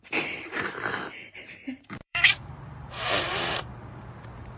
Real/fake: fake